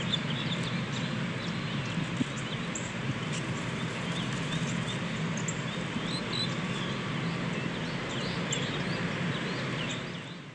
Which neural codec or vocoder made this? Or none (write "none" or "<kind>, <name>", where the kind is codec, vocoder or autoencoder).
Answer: none